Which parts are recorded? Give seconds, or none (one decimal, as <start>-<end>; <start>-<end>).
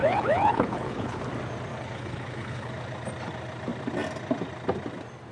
1.2-1.7; 2.7-5.3